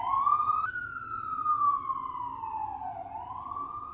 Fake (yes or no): no